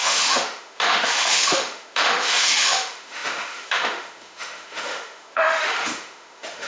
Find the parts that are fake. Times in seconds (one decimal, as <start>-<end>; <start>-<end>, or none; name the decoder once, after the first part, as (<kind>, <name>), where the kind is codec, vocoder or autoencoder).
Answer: 0.0-6.7 (autoencoder, DAC-VAE)